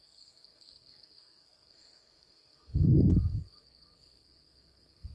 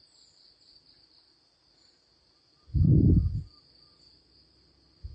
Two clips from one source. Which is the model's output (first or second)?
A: first